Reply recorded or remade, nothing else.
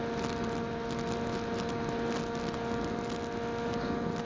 recorded